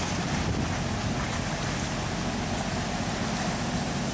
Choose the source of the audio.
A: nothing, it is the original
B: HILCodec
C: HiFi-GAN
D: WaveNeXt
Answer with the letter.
A